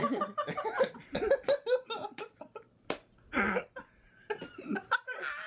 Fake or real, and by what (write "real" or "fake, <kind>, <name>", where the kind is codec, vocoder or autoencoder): real